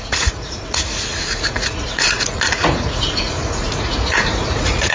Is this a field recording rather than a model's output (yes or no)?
no